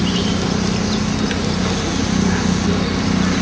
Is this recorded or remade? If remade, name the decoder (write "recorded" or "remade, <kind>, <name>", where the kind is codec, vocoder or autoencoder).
recorded